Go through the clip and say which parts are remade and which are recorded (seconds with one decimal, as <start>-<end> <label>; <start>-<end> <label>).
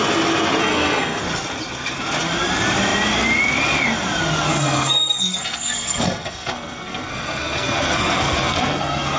0.0-0.6 recorded; 0.6-1.2 remade; 1.2-4.5 recorded; 4.5-9.2 remade